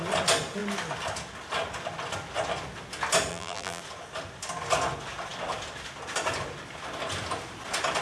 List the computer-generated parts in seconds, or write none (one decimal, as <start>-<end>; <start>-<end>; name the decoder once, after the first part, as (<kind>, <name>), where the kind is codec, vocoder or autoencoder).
3.3-3.8 (vocoder, BigVGAN v2)